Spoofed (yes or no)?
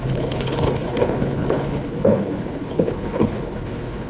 yes